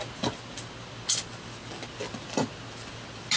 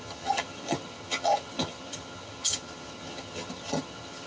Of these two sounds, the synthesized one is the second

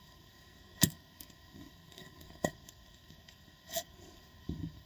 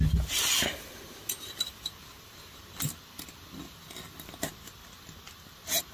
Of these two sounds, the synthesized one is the first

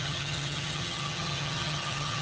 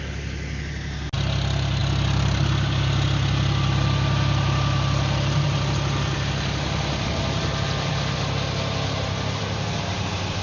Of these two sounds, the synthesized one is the first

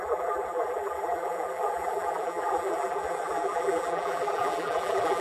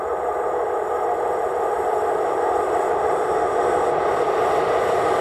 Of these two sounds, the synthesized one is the first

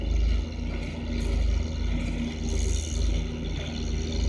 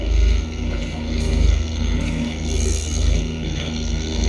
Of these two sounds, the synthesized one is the second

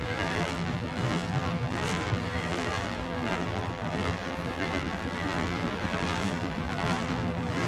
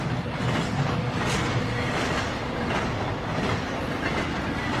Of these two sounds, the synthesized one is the first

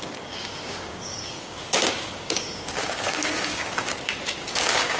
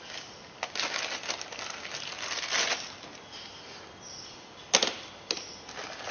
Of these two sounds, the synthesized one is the first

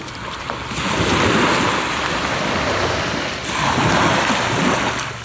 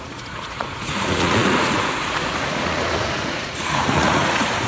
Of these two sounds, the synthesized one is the second